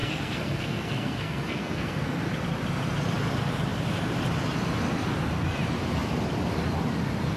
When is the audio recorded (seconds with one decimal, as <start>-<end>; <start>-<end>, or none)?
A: 2.2-7.4